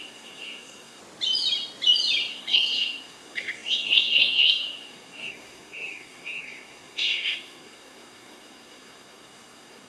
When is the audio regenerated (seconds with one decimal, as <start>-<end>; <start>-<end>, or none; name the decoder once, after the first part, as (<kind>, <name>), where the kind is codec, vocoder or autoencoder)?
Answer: 0.0-1.0 (codec, SNAC); 2.3-9.9